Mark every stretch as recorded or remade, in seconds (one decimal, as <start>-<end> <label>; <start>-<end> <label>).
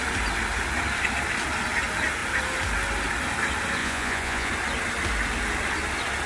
0.0-3.8 recorded; 3.8-4.5 remade; 4.5-6.3 recorded